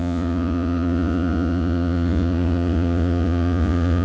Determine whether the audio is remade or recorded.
remade